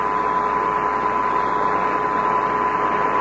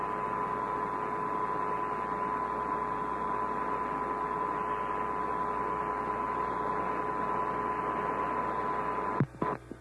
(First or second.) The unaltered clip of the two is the second